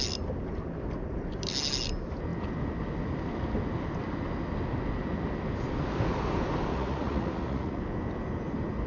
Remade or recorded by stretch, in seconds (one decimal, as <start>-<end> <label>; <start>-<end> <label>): 0.0-6.7 recorded; 6.7-7.8 remade; 7.8-8.9 recorded